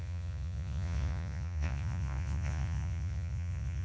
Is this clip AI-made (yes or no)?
yes